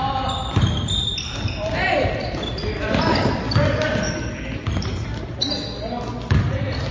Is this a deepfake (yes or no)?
no